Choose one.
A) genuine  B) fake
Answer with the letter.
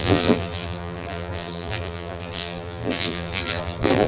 B